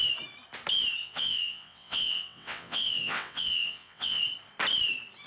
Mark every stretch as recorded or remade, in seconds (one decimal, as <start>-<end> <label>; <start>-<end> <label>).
0.0-1.0 recorded; 1.0-4.2 remade; 4.2-5.3 recorded